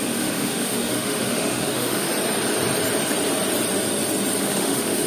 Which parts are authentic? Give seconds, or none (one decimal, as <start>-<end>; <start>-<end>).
2.1-4.4